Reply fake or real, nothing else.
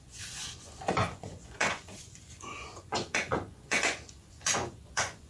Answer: fake